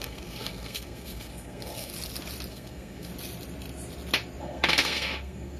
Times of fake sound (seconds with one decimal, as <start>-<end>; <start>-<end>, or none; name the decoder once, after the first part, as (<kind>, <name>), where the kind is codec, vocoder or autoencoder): 0.0-1.9 (codec, SNAC); 2.5-3.1; 4.4-5.6